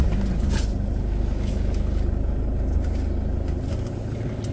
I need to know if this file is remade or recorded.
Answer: recorded